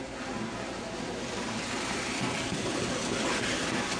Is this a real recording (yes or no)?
yes